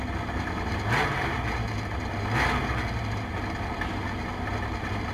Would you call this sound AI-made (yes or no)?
no